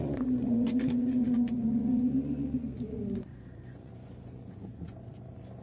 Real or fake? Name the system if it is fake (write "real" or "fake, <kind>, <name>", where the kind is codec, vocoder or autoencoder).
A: fake, vocoder, Vocos